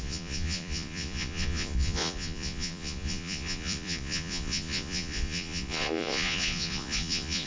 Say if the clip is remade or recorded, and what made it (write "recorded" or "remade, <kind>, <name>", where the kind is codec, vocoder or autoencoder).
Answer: remade, vocoder, Vocos